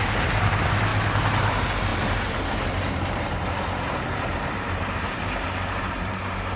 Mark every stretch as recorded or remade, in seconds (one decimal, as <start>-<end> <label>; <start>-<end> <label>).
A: 0.0-0.9 remade; 0.9-1.4 recorded; 1.4-6.6 remade